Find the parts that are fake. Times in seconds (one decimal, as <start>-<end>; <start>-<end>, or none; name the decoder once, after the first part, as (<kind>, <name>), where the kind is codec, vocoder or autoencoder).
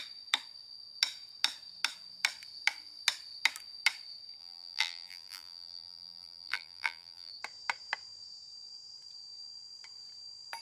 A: 4.4-7.3 (vocoder, BigVGAN v2)